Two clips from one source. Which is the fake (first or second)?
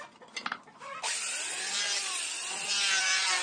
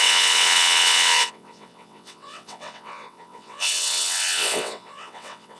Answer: second